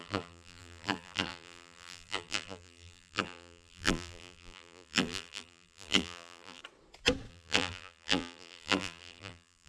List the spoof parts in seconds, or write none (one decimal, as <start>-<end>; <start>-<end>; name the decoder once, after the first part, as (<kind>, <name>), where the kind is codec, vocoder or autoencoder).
0.0-6.6 (vocoder, BigVGAN v2); 7.3-9.7